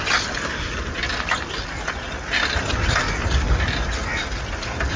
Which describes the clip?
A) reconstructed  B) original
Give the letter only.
B